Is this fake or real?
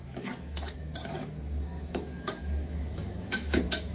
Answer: fake